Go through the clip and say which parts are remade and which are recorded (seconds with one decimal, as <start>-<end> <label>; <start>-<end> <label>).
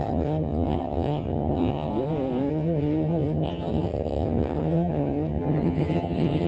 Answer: 0.0-1.9 remade; 1.9-2.5 recorded; 2.5-6.5 remade